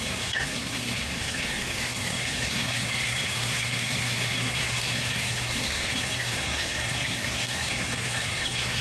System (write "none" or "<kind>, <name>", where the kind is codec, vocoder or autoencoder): codec, SNAC